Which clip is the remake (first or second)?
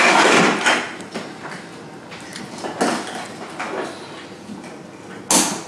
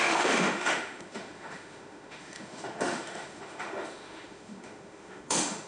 second